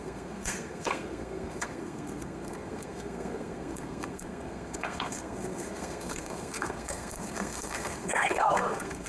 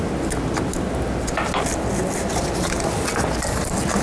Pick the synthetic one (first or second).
first